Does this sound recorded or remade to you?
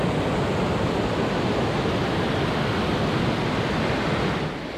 recorded